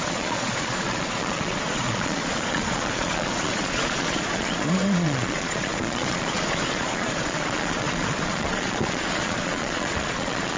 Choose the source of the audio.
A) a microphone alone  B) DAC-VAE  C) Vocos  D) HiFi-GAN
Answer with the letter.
C